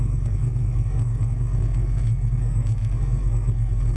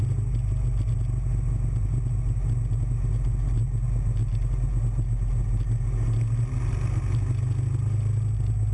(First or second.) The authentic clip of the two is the second